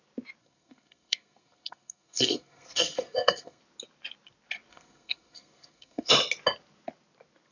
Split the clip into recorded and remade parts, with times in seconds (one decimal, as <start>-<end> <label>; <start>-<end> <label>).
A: 0.0-0.4 recorded; 0.4-3.6 remade; 3.6-4.7 recorded; 4.7-6.1 remade; 6.1-7.5 recorded